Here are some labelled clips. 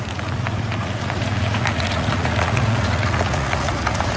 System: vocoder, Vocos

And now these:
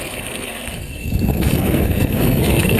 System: codec, SNAC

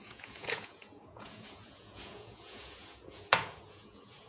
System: vocoder, Vocos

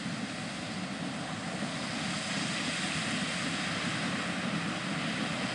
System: none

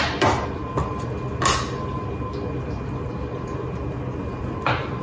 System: none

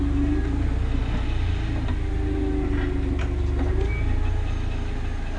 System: none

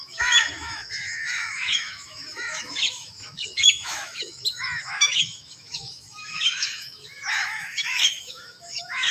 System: autoencoder, DAC-VAE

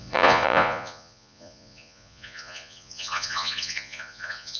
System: vocoder, Vocos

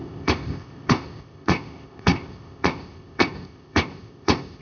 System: codec, ZipCodec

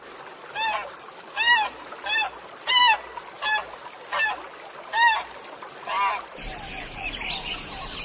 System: none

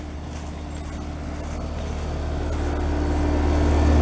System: none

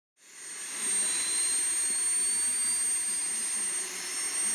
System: none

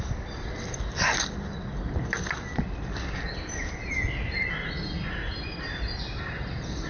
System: none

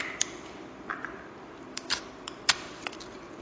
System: vocoder, BigVGAN v2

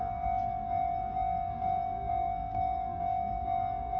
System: codec, SNAC